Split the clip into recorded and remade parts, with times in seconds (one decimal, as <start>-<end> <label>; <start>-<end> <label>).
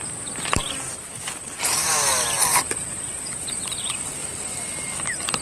0.0-5.4 remade